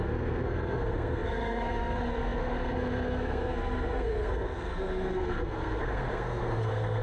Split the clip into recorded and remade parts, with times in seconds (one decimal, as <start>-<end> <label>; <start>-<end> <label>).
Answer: 0.0-7.0 remade